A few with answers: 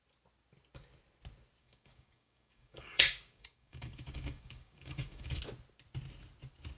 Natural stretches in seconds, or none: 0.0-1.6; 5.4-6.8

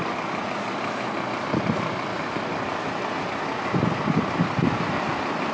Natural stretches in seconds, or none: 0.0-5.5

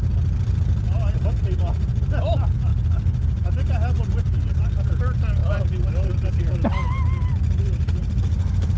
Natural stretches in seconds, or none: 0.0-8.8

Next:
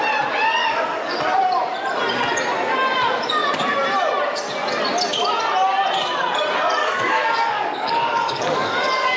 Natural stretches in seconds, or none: 0.0-0.6; 1.1-6.8

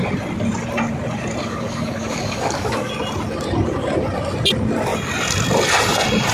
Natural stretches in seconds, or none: 0.0-1.4; 2.9-6.3

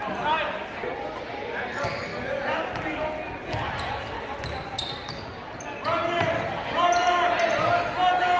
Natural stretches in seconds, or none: 0.0-8.4

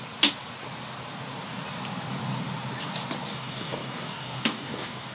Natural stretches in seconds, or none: 0.0-3.3